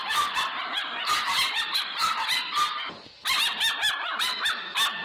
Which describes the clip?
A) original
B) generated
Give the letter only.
A